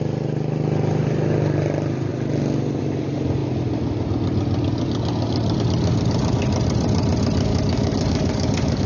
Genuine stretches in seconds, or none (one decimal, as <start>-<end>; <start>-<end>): 0.0-7.5